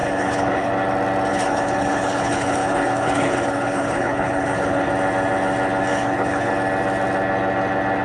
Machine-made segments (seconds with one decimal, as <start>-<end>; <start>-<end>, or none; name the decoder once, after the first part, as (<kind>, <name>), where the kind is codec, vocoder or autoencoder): 0.0-0.7 (codec, HILCodec); 1.3-4.9; 5.9-6.5